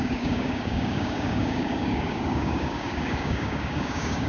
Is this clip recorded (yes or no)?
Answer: no